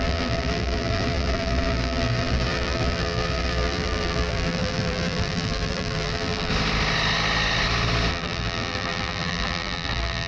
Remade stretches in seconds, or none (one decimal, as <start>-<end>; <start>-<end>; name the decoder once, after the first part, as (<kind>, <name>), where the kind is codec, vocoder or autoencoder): 0.0-6.5 (vocoder, BigVGAN v2); 8.1-10.3